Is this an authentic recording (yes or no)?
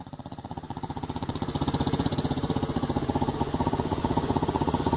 no